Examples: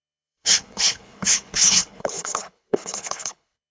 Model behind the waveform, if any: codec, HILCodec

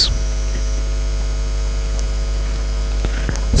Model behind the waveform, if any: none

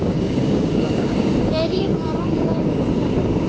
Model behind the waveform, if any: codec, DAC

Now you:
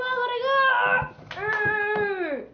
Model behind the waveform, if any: none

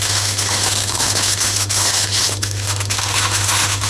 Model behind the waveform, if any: autoencoder, DAC-VAE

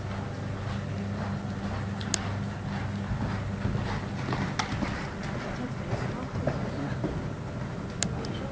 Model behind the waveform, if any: none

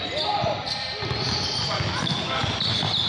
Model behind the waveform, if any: none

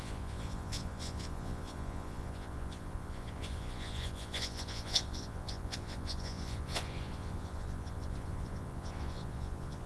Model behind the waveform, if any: vocoder, Vocos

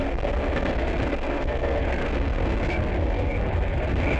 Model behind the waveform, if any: codec, SNAC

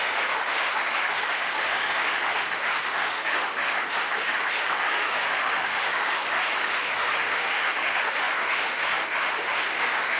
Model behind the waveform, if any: autoencoder, DAC-VAE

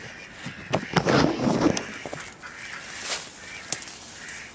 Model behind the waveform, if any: none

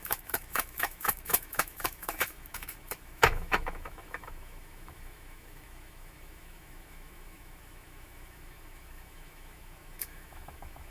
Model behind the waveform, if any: autoencoder, DAC-VAE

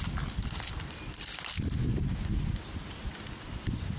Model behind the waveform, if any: none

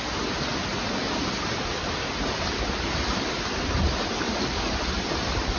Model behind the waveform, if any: none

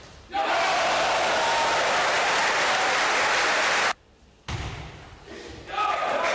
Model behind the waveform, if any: none